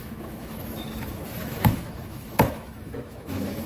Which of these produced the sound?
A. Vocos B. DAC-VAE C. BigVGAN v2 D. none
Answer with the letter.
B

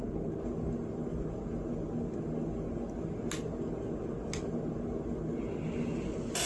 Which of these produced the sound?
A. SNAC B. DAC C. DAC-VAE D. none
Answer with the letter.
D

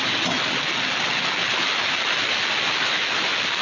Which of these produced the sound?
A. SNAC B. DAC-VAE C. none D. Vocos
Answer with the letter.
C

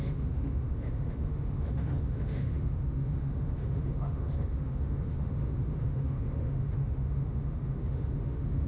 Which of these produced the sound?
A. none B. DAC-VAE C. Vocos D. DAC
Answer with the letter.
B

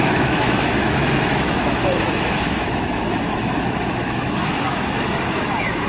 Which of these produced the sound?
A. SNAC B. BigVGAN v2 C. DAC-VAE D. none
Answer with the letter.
C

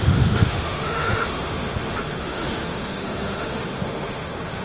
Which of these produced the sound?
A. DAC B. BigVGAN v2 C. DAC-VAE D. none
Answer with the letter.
C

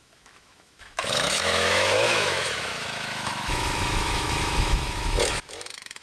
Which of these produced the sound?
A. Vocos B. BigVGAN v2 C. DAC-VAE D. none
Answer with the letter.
C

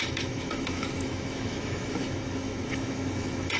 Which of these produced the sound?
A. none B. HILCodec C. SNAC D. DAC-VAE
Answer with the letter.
D